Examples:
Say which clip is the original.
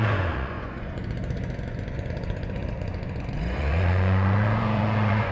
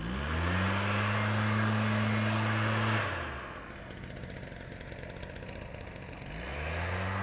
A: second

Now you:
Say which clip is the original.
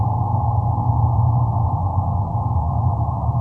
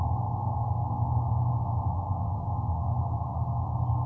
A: second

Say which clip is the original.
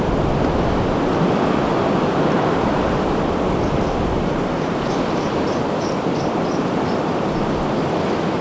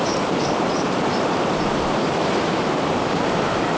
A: first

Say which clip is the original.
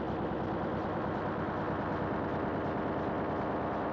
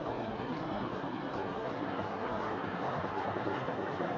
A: first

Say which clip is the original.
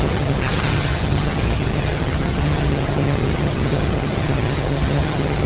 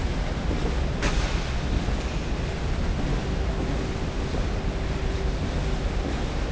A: second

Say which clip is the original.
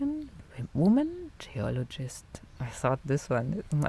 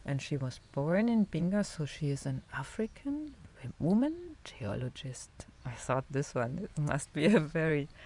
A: first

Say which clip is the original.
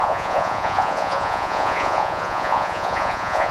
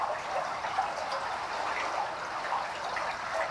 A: second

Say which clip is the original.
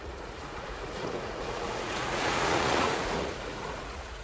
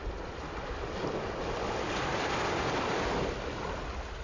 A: second